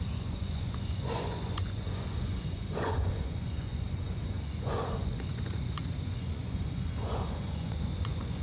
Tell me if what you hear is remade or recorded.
remade